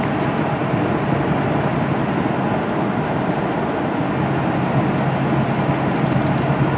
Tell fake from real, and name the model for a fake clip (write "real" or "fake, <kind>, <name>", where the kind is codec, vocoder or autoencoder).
real